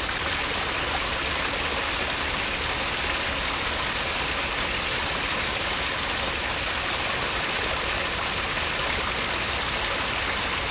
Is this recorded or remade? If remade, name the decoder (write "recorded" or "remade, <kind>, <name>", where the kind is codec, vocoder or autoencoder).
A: recorded